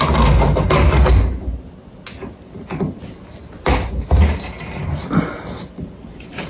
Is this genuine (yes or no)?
yes